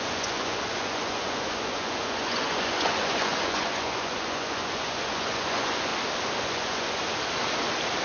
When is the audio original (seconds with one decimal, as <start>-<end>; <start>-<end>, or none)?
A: 5.9-6.4; 7.0-8.0